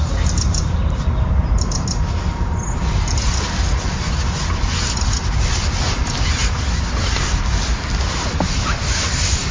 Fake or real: real